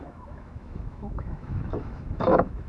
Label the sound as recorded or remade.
remade